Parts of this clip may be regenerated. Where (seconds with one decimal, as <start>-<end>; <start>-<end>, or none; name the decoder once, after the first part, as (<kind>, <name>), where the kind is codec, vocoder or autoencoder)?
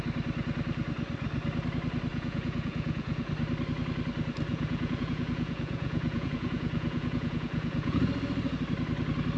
2.1-3.3 (vocoder, Vocos); 4.5-8.0